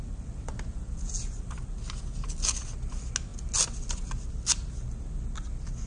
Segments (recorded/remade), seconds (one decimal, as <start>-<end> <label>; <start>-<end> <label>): 0.0-0.7 recorded; 0.7-1.2 remade; 1.2-5.9 recorded